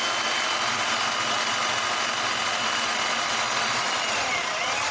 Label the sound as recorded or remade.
recorded